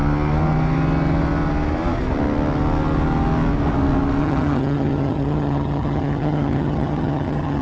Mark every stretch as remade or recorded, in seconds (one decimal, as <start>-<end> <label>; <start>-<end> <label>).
0.0-4.2 recorded; 4.2-7.6 remade